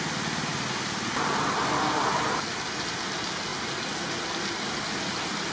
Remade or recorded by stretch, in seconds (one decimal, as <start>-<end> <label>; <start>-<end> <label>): 0.0-5.5 recorded